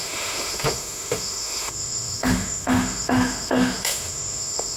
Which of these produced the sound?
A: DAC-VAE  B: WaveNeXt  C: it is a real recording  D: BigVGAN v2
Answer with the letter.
A